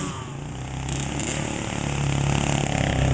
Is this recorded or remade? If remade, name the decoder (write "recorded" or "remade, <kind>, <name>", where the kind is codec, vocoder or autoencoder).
recorded